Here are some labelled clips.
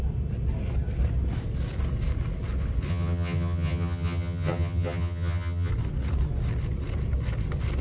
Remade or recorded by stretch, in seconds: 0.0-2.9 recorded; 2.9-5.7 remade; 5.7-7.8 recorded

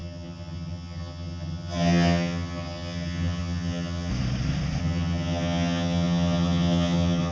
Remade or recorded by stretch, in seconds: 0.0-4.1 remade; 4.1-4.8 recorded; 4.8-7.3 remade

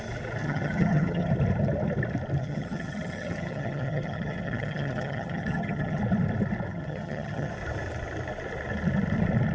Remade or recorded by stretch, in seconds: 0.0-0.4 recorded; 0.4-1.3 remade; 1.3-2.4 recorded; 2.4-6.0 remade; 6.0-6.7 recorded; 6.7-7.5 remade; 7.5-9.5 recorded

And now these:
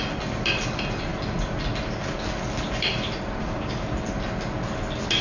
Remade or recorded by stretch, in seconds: 0.0-5.2 recorded

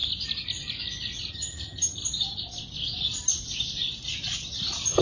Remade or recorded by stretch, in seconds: 0.0-1.3 recorded; 1.3-2.0 remade; 2.0-5.0 recorded

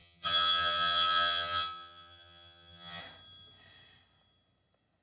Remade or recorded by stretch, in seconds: 0.0-3.0 remade; 3.0-5.0 recorded